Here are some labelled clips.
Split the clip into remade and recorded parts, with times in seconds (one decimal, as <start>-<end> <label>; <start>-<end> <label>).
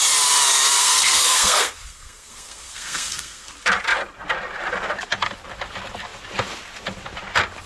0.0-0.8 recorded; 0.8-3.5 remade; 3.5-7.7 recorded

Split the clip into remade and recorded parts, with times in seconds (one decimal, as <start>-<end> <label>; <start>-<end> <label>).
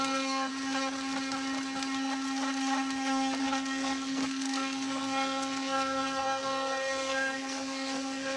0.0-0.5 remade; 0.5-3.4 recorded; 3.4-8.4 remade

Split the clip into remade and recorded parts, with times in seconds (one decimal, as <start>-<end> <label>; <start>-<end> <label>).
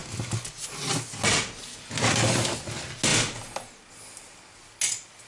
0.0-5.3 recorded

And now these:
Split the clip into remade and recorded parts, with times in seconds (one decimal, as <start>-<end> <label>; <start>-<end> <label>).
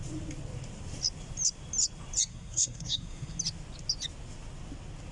0.0-2.3 recorded; 2.3-3.4 remade; 3.4-5.1 recorded